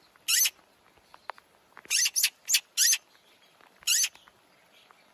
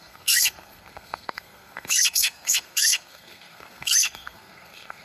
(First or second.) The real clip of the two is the first